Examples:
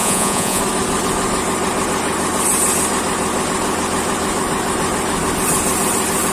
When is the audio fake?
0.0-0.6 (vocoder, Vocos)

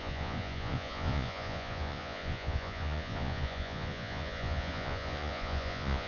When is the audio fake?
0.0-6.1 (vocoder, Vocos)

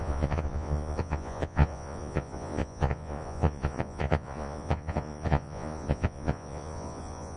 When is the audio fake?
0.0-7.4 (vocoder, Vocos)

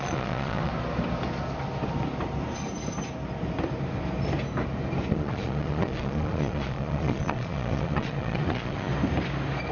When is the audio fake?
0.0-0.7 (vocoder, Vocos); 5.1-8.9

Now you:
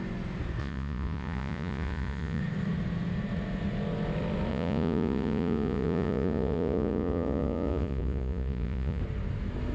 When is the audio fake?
0.6-2.4 (vocoder, Vocos); 4.5-9.0

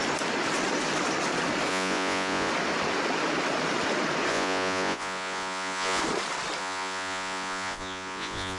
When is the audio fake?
1.7-2.5 (vocoder, Vocos); 4.3-6.0; 6.6-8.6

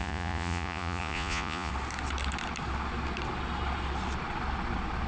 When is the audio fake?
0.0-1.7 (vocoder, Vocos)

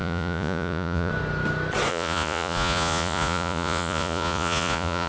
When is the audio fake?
0.0-1.1 (vocoder, Vocos); 1.9-5.1